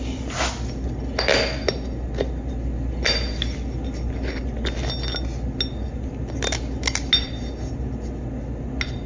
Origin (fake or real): real